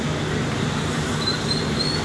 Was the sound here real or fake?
real